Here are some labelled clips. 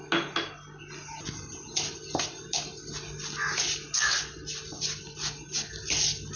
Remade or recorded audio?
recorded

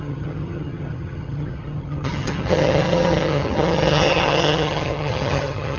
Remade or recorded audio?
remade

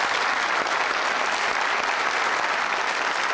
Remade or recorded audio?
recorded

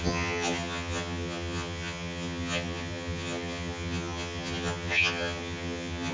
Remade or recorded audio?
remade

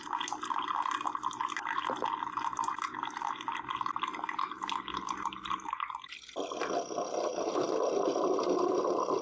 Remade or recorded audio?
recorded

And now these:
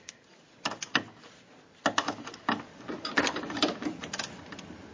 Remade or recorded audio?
recorded